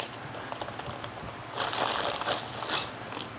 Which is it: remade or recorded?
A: recorded